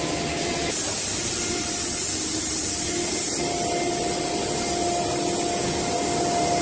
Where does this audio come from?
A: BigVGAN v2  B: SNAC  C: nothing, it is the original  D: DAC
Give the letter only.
C